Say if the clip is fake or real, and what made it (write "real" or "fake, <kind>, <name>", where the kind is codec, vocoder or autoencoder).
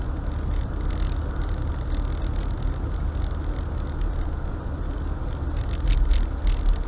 real